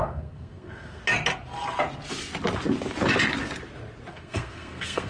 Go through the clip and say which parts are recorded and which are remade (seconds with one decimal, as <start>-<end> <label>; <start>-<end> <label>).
0.0-1.0 remade; 1.0-4.1 recorded; 4.1-5.1 remade